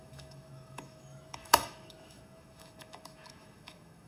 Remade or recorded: remade